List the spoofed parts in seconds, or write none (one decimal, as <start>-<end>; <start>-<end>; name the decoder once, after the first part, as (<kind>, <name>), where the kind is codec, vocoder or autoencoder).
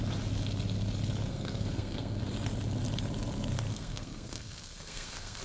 1.3-2.2 (codec, SNAC); 3.7-5.4